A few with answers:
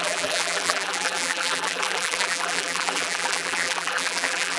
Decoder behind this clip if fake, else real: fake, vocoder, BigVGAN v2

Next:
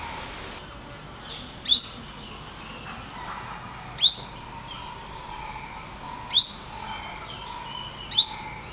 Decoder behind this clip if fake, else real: real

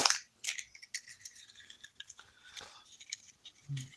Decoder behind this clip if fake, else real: real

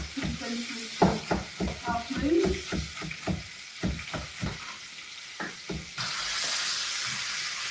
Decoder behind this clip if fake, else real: real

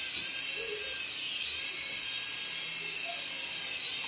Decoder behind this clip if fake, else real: real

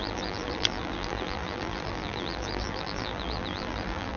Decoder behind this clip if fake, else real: fake, vocoder, BigVGAN v2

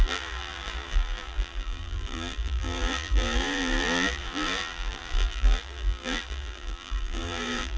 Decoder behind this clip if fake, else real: fake, vocoder, BigVGAN v2